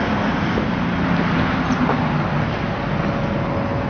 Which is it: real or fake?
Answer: real